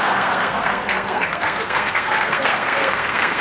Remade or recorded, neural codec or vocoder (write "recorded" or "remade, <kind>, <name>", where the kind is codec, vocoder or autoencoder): remade, codec, SNAC